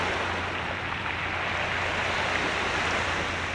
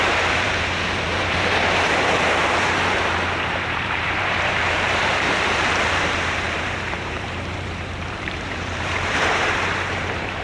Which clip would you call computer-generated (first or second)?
second